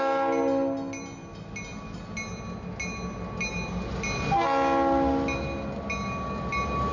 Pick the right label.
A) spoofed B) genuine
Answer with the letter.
B